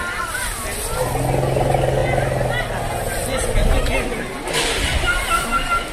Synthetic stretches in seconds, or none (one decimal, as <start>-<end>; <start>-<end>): none